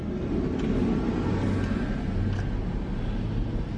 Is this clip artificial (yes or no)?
no